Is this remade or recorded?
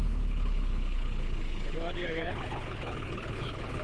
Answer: remade